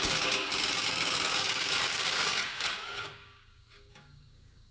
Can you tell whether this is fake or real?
fake